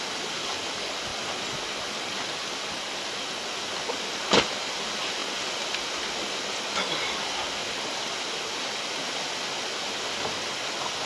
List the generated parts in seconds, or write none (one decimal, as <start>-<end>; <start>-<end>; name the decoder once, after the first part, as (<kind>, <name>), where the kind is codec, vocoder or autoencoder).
7.6-9.0 (vocoder, BigVGAN v2)